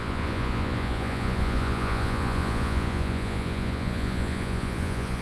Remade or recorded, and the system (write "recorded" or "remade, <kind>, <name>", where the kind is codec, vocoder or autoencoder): remade, vocoder, Vocos